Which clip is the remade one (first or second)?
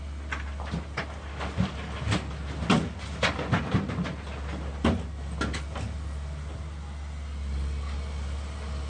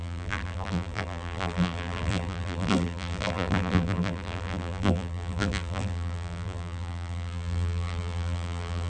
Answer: second